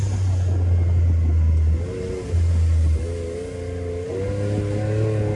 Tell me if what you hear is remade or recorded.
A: recorded